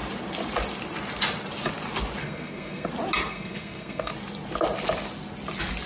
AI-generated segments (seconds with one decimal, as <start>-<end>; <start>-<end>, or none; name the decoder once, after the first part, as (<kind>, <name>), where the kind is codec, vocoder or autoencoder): 2.2-2.9 (codec, SNAC); 3.3-4.1